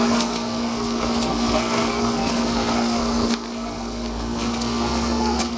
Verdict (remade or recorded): remade